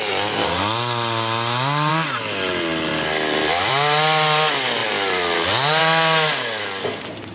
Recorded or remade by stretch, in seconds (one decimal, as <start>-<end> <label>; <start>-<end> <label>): 0.0-7.3 recorded